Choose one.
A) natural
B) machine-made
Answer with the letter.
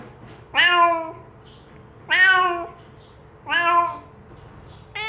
A